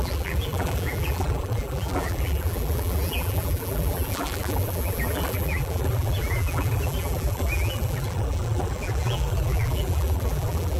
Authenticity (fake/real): fake